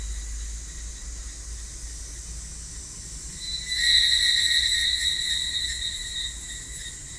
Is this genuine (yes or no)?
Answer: yes